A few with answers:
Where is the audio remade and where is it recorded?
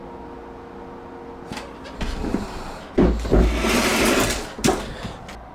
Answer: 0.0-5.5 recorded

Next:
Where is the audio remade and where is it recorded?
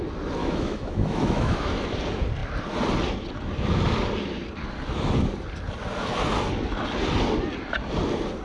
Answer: 0.0-0.4 recorded; 0.4-1.8 remade; 1.8-8.4 recorded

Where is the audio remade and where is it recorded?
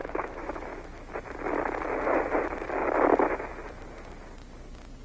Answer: 0.0-1.1 remade; 1.1-5.0 recorded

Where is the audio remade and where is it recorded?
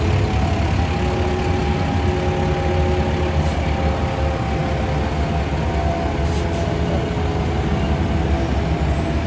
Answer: 0.0-9.3 recorded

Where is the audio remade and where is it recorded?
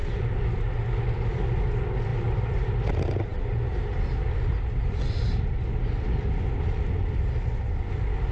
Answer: 0.0-8.3 recorded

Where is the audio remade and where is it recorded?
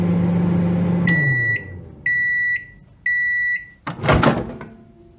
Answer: 0.0-5.2 recorded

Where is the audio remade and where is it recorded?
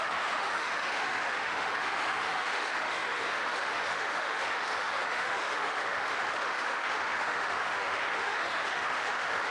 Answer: 0.0-9.5 remade